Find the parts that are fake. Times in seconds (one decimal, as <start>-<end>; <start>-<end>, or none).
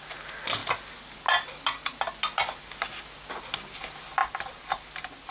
none